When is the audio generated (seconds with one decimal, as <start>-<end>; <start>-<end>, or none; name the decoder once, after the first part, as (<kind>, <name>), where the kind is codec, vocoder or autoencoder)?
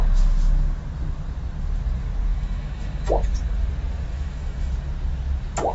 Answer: 2.3-3.1 (autoencoder, DAC-VAE); 4.1-4.7